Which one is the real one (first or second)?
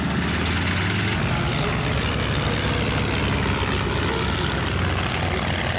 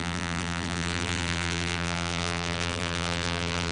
first